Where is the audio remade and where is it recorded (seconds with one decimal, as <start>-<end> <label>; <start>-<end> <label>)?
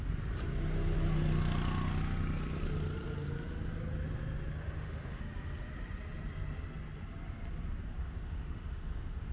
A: 0.0-4.6 recorded; 4.6-5.2 remade; 5.2-8.0 recorded; 8.0-9.3 remade